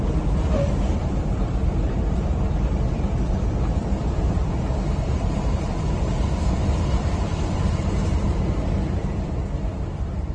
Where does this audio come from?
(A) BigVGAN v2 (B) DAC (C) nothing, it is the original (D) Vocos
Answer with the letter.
A